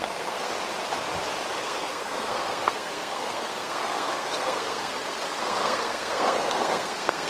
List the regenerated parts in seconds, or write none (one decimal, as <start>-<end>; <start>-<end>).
0.0-0.5; 1.6-7.3